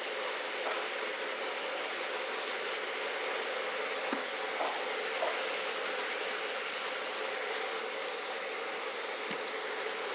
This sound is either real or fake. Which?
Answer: real